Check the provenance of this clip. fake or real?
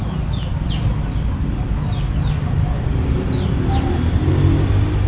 real